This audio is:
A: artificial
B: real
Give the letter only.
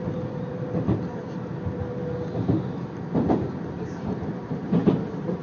B